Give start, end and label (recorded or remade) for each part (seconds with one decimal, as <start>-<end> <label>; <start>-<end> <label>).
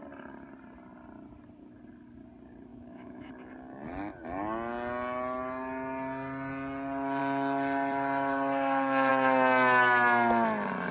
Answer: 0.0-2.7 recorded; 2.7-3.3 remade; 3.3-10.9 recorded